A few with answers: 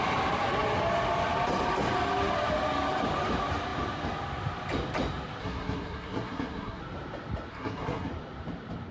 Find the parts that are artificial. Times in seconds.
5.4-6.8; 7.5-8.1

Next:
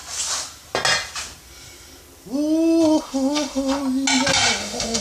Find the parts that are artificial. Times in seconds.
3.0-3.8; 4.6-5.0

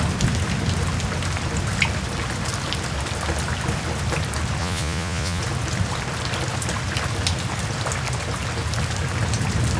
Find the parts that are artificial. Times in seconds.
4.6-5.4

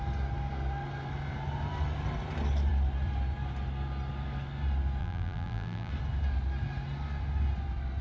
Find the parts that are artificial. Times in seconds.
5.0-5.9